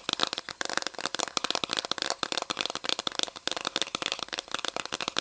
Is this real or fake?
real